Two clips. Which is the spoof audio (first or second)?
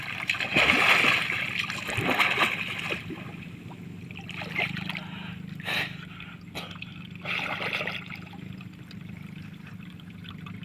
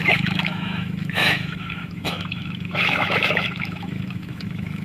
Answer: second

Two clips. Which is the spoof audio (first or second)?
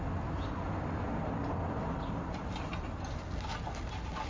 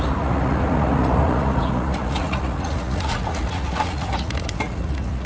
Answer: second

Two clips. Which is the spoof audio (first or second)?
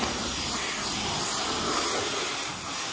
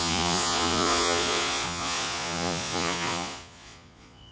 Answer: second